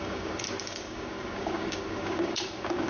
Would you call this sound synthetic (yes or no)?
yes